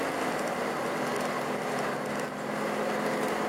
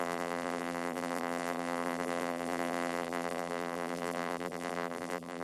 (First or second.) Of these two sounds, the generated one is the second